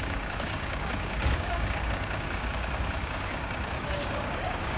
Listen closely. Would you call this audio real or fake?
fake